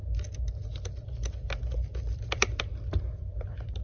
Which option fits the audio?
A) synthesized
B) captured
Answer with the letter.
B